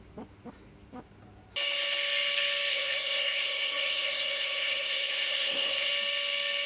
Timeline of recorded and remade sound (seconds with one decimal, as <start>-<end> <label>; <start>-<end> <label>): 0.0-2.7 recorded; 2.7-5.9 remade; 5.9-6.7 recorded